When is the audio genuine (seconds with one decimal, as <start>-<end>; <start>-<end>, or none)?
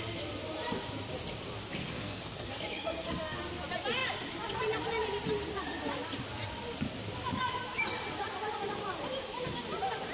0.0-1.8; 3.4-10.1